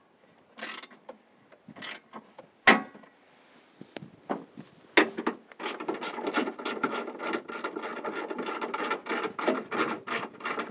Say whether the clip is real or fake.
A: real